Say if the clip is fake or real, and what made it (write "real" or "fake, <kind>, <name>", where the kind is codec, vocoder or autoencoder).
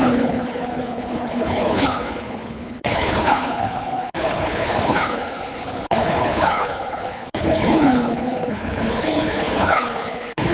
fake, codec, HILCodec